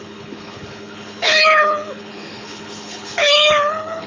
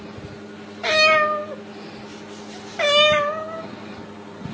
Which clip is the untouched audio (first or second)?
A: second